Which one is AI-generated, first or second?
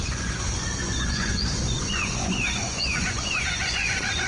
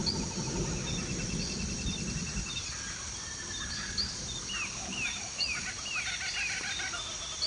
first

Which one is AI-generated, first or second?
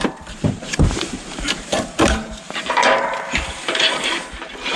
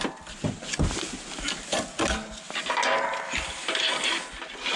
first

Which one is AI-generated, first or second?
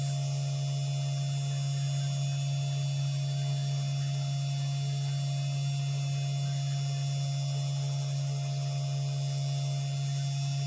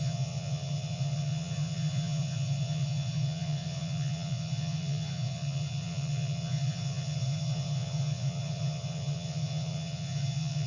second